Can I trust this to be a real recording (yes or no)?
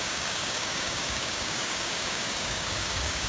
no